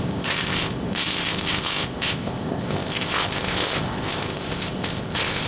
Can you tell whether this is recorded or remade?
remade